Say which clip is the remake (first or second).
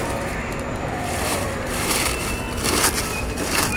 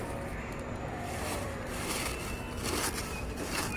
first